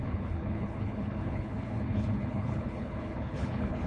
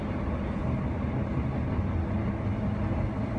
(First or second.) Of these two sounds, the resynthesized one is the first